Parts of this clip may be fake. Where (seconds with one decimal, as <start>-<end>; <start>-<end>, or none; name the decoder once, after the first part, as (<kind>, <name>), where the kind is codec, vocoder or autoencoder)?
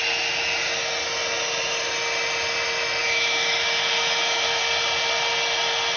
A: 3.0-4.6 (autoencoder, DAC-VAE)